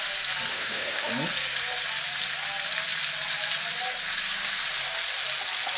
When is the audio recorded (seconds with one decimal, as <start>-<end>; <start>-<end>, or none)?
0.0-0.5; 1.1-5.8